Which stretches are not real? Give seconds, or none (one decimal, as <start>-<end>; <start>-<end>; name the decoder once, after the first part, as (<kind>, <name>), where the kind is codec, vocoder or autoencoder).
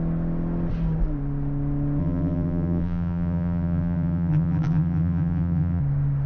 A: 2.0-5.8 (vocoder, BigVGAN v2)